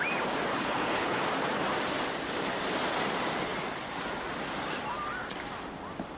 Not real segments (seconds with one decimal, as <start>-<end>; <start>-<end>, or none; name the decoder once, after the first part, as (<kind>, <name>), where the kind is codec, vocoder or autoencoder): 0.5-1.2 (codec, HILCodec)